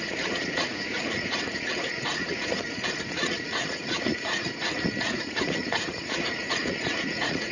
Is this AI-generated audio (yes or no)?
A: yes